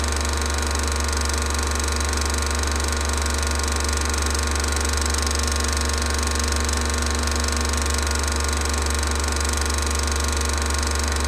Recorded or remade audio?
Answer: recorded